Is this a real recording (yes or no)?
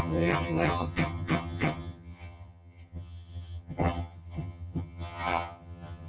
no